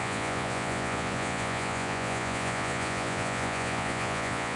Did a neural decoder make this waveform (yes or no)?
yes